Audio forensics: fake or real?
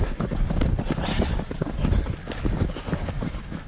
real